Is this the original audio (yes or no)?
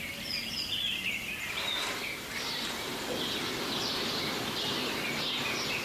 yes